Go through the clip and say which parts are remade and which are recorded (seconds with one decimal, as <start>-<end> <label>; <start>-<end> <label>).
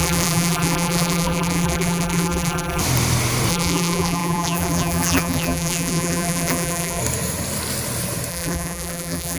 0.0-2.8 remade; 2.8-3.5 recorded; 3.5-7.0 remade; 7.0-8.3 recorded; 8.3-9.4 remade